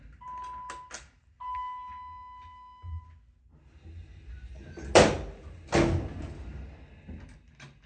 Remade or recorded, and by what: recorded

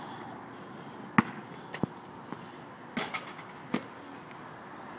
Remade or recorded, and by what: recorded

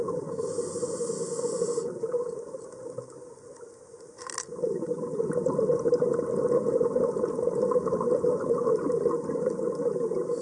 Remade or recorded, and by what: recorded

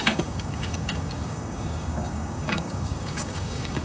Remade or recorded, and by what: remade, codec, DAC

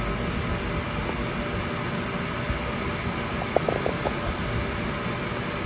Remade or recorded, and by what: recorded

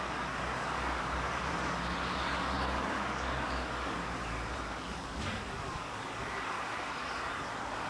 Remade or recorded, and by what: remade, codec, DAC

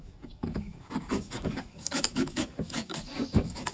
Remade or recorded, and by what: remade, codec, DAC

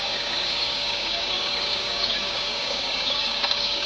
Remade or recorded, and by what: remade, codec, DAC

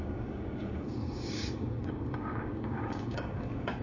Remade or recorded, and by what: remade, codec, DAC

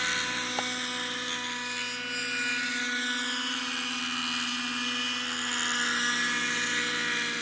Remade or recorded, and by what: recorded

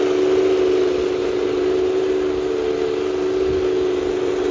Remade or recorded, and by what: recorded